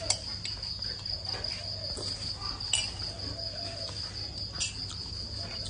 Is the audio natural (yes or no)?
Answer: yes